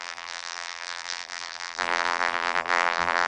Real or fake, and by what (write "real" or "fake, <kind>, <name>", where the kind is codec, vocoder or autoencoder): fake, vocoder, BigVGAN v2